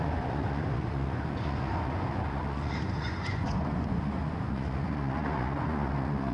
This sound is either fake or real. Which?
fake